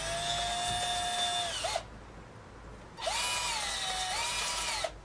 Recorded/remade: recorded